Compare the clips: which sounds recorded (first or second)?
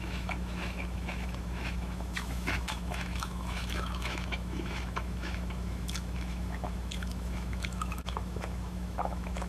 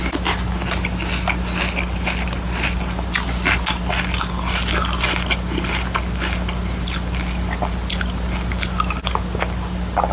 second